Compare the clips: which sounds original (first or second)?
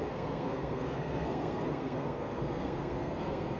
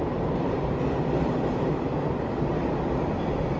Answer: second